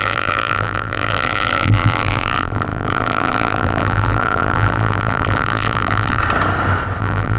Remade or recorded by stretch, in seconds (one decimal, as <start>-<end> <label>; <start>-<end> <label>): 0.0-6.2 remade; 6.2-7.0 recorded; 7.0-7.4 remade